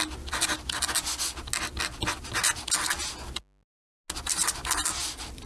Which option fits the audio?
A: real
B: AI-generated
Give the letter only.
A